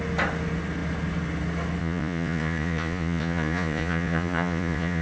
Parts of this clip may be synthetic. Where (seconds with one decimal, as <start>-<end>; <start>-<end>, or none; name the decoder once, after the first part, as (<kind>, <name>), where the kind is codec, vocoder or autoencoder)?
1.8-5.0 (vocoder, Vocos)